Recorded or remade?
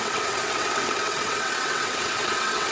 remade